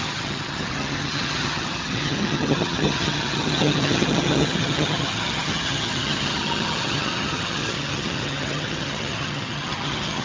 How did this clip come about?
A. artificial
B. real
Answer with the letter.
A